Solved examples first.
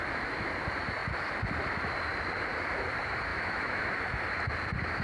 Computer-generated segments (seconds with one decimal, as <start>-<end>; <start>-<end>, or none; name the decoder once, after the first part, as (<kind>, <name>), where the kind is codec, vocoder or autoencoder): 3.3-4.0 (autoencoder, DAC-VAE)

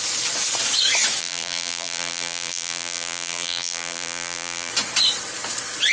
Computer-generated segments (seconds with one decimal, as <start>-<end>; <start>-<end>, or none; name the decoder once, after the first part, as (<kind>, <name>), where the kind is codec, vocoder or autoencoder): 1.2-4.7 (vocoder, BigVGAN v2)

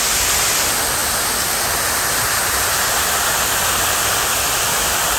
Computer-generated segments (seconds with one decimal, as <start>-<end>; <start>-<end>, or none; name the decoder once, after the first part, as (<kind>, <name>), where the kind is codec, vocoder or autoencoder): 0.0-1.0 (vocoder, BigVGAN v2); 1.7-5.2